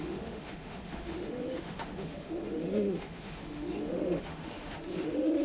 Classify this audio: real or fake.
fake